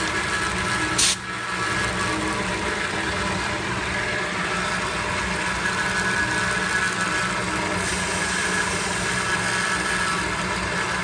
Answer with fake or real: real